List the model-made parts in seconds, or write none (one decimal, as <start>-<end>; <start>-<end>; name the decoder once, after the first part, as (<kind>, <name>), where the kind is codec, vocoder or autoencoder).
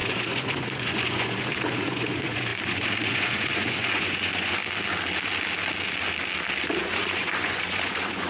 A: 0.0-4.6 (vocoder, Vocos); 6.8-8.3